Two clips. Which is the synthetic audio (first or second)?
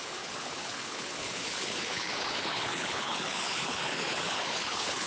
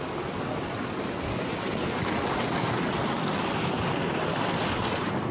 first